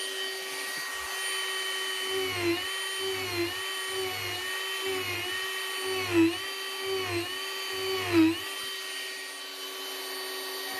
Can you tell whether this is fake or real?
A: real